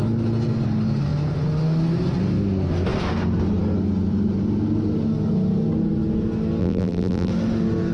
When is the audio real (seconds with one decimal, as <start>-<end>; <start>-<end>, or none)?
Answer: 0.0-6.6; 7.3-7.9